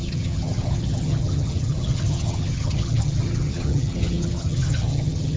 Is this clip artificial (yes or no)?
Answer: yes